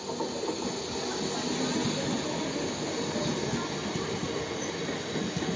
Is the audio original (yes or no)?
yes